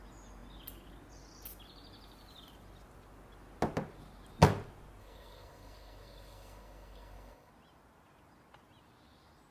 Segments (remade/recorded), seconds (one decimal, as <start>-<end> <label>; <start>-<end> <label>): 0.0-5.0 recorded; 5.0-7.5 remade; 7.5-9.5 recorded